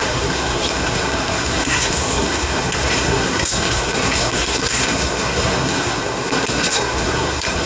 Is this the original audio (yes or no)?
no